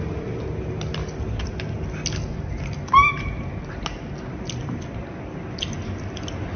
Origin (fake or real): real